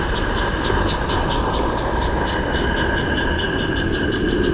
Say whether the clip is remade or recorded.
recorded